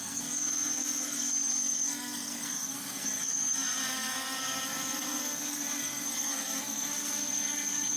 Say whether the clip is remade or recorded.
remade